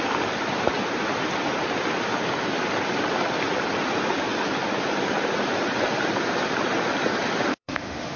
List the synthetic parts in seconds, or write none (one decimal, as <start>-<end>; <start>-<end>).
7.5-8.2